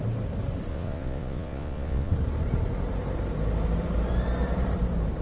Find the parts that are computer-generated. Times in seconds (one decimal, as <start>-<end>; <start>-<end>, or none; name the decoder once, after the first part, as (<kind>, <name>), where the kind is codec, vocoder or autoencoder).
0.7-2.1 (vocoder, Vocos)